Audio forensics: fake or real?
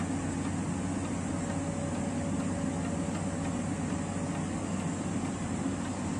real